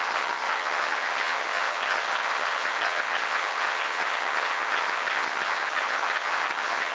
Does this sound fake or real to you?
fake